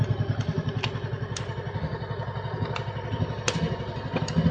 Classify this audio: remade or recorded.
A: recorded